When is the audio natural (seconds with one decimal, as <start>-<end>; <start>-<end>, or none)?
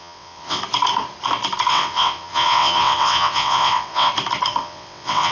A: 0.6-1.7; 4.1-4.6